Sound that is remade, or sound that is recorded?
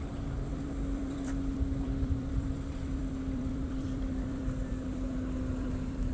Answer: remade